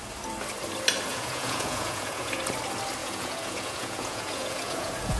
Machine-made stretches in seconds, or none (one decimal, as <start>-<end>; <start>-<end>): 1.1-2.4; 3.0-5.2